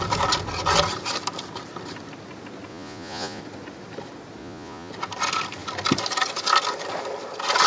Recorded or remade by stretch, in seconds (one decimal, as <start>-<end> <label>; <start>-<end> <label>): 0.0-2.7 recorded; 2.7-3.4 remade; 3.4-4.4 recorded; 4.4-4.9 remade; 4.9-7.7 recorded